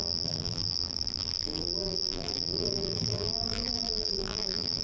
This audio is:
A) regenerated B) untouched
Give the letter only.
A